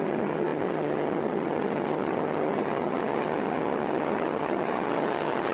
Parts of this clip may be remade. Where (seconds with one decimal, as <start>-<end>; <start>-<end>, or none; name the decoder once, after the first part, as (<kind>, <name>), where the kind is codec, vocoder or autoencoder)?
0.0-5.5 (vocoder, HiFi-GAN)